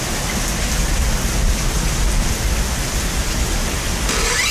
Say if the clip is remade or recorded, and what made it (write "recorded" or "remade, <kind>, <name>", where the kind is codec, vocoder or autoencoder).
recorded